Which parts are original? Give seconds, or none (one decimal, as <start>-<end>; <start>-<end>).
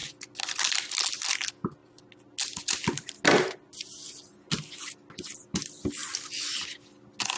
0.0-7.4